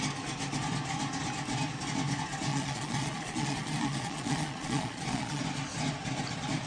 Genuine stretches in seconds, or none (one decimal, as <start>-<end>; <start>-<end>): 0.0-2.5; 5.4-6.7